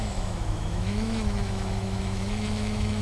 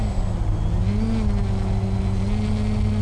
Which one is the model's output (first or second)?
first